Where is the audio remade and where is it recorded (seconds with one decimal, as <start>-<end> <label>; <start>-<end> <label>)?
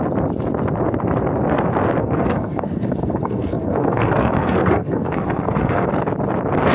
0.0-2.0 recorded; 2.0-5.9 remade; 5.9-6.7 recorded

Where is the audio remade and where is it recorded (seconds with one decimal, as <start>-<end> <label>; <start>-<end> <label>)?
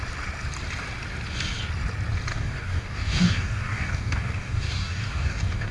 0.0-2.3 recorded; 2.3-5.7 remade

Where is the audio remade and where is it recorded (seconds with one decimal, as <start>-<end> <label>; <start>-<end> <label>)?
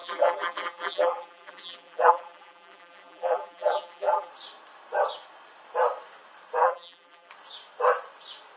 0.0-4.3 remade; 4.3-6.6 recorded; 6.6-7.3 remade; 7.3-8.6 recorded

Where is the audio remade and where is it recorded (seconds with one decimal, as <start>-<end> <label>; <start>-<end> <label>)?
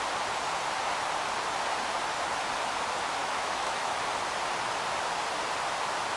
0.0-3.2 recorded; 3.2-4.0 remade; 4.0-6.2 recorded